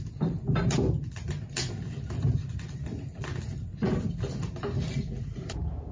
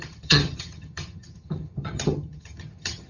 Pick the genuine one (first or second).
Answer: first